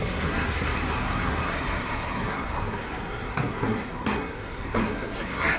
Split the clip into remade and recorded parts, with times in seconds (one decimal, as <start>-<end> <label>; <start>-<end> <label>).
0.0-5.6 remade